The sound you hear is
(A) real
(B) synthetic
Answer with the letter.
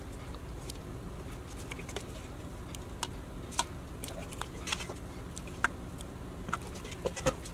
A